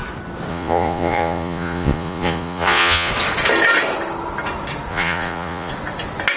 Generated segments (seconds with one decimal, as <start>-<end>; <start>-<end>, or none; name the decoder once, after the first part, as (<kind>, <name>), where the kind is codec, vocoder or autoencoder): 0.5-3.1 (vocoder, Vocos); 4.9-5.7